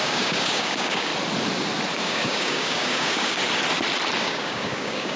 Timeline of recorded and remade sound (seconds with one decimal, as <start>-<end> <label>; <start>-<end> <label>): 0.0-1.1 remade; 1.1-2.0 recorded; 2.0-3.4 remade; 3.4-4.2 recorded; 4.2-5.2 remade